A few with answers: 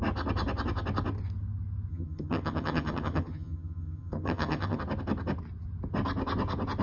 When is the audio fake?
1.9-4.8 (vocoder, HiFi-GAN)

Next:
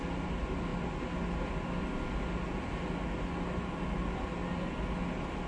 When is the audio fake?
none

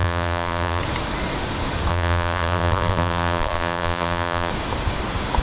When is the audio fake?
0.0-0.8 (vocoder, BigVGAN v2); 1.9-4.5

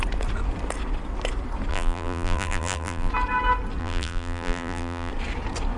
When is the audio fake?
1.7-3.1 (vocoder, BigVGAN v2); 3.8-5.1

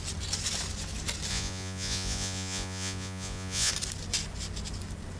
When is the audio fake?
1.3-3.7 (vocoder, Vocos)

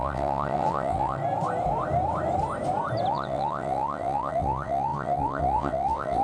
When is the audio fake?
0.0-1.2 (vocoder, WaveNeXt); 3.1-6.2